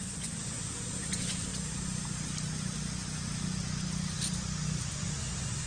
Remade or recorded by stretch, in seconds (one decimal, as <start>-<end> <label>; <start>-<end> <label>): 0.0-1.5 remade; 1.5-4.9 recorded; 4.9-5.7 remade